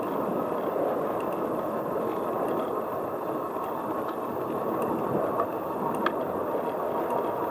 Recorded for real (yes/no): yes